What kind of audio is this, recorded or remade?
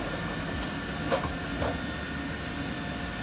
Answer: recorded